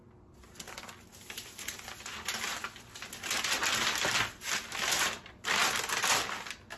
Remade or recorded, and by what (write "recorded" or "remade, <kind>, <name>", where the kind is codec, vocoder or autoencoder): recorded